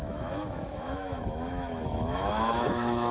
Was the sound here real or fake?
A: fake